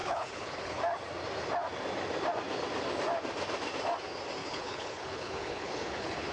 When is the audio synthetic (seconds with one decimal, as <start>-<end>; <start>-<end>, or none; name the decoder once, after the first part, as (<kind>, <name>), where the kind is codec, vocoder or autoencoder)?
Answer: 0.0-0.8 (codec, HILCodec); 4.4-6.3